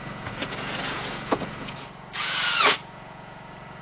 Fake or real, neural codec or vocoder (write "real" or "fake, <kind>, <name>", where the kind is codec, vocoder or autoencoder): fake, vocoder, Vocos